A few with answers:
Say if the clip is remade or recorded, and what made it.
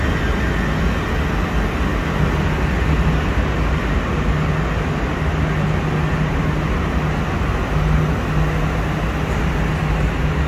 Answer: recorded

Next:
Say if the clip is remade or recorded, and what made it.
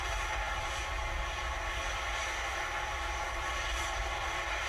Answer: recorded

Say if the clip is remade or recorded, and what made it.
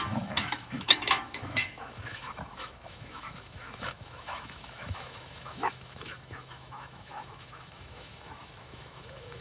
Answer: remade, autoencoder, DAC-VAE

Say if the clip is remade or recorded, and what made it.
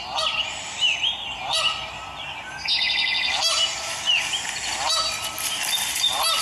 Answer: recorded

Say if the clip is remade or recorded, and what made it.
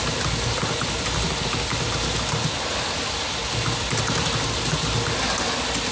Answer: recorded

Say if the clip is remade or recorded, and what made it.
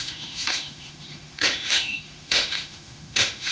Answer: remade, autoencoder, DAC-VAE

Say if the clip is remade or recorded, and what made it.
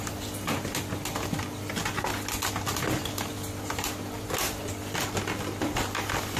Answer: recorded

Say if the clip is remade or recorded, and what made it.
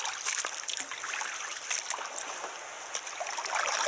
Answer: recorded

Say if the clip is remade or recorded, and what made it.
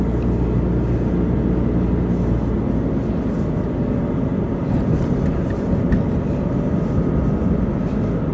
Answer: recorded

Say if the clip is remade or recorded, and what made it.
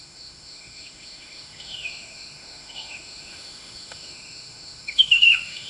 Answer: remade, autoencoder, DAC-VAE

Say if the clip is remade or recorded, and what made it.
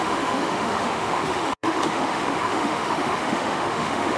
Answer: remade, autoencoder, DAC-VAE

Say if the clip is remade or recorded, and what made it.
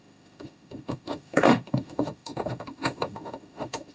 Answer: remade, autoencoder, DAC-VAE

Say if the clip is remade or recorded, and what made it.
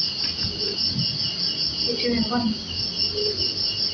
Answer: recorded